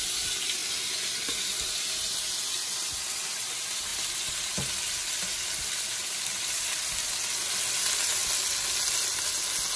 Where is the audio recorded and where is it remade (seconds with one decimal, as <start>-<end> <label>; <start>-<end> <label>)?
0.0-9.8 recorded